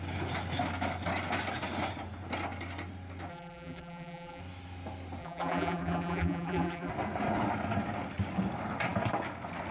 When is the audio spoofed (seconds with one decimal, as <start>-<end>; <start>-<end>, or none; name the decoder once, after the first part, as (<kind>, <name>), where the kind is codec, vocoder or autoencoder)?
3.3-4.4 (vocoder, BigVGAN v2); 5.2-6.9

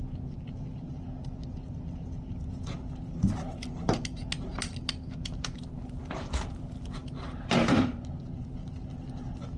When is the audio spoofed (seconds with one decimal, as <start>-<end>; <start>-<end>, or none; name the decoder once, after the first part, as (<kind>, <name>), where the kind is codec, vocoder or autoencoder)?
none